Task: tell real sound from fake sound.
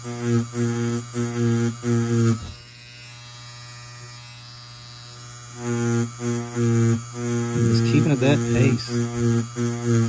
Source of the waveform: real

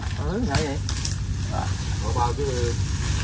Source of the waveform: real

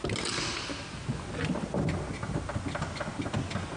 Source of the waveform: real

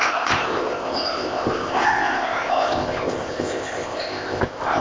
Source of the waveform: fake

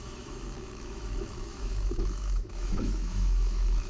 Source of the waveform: fake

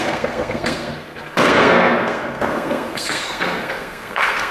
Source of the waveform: fake